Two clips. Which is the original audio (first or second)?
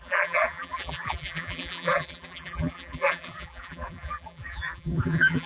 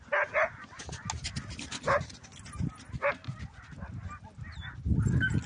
second